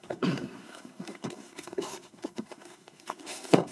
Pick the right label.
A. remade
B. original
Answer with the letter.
A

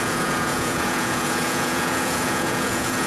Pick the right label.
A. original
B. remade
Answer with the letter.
B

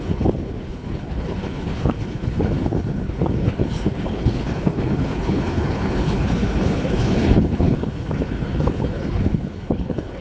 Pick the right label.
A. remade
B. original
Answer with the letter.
A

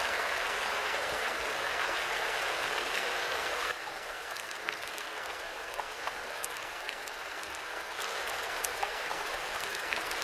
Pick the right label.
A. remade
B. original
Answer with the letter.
A